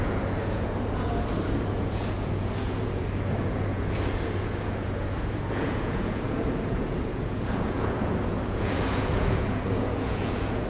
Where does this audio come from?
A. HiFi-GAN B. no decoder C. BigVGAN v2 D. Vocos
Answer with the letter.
D